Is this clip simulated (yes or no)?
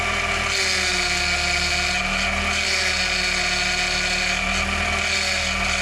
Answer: no